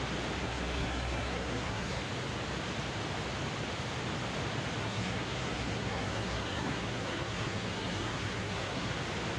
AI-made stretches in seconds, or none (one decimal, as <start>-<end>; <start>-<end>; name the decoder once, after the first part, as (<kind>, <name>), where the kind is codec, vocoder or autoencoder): 0.4-2.0 (codec, SNAC); 4.8-8.9